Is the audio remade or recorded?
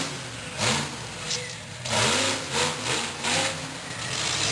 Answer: recorded